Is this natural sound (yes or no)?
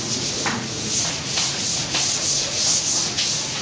no